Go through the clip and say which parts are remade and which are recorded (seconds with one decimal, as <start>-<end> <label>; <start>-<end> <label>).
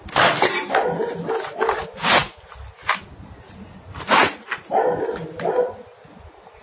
0.0-6.6 recorded